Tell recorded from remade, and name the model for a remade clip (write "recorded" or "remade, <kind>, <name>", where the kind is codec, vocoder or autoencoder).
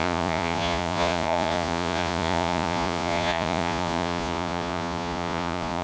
remade, vocoder, Vocos